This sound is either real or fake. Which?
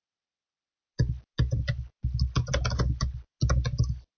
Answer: real